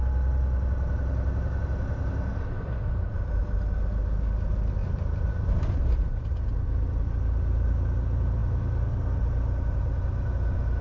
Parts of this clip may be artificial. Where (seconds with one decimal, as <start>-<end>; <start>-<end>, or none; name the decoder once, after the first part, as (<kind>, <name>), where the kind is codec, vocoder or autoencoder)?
4.8-6.3 (vocoder, BigVGAN v2)